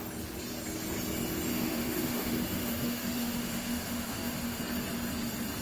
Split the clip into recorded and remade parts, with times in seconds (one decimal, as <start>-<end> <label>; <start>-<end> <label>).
0.0-1.5 recorded; 1.5-4.6 remade; 4.6-5.6 recorded